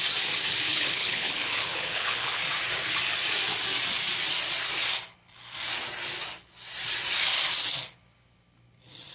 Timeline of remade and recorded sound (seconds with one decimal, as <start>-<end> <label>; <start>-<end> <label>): 0.0-0.7 recorded; 0.7-2.4 remade; 2.4-9.1 recorded